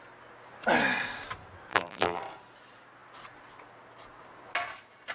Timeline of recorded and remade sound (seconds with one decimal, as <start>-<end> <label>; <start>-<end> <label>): 0.0-1.7 recorded; 1.7-2.2 remade; 2.2-5.1 recorded